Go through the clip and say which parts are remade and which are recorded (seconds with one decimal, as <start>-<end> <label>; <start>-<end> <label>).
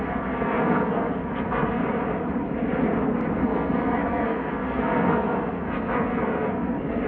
0.0-1.8 remade; 1.8-3.3 recorded; 3.3-7.1 remade